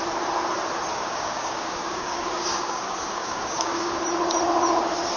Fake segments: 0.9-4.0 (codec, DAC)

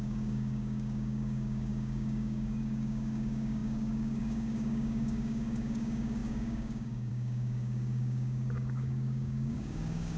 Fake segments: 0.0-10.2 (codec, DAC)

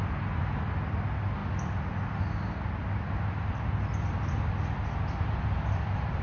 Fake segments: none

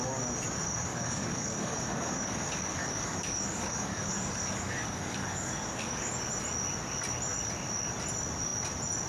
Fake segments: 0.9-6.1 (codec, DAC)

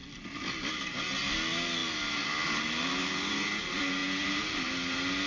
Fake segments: none

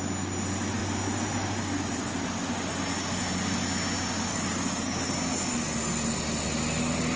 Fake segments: 4.3-5.1 (codec, DAC)